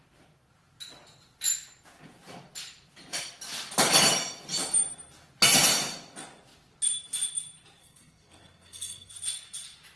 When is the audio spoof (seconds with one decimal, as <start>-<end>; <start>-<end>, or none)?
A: 7.8-9.1